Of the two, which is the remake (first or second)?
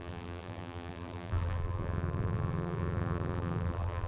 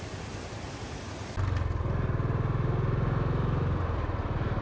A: first